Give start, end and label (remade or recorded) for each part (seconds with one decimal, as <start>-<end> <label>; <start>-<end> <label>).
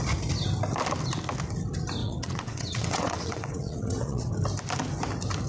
0.0-2.0 recorded; 2.0-4.3 remade; 4.3-5.5 recorded